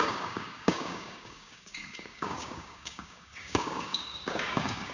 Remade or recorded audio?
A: remade